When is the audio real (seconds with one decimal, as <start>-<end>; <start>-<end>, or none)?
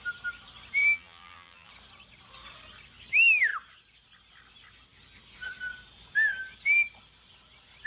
0.0-0.8; 1.7-7.9